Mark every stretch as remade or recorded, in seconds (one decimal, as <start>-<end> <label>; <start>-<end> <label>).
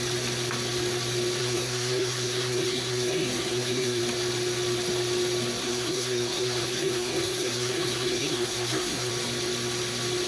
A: 0.0-1.4 recorded; 1.4-4.0 remade; 4.0-5.6 recorded; 5.6-9.1 remade; 9.1-10.3 recorded